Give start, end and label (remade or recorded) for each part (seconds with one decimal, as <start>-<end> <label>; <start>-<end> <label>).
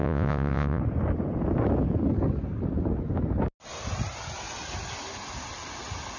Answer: 0.0-0.8 remade; 0.8-6.2 recorded